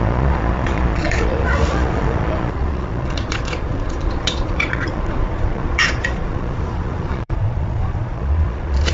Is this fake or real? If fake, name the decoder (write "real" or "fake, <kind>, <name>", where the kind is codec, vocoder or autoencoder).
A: fake, vocoder, Vocos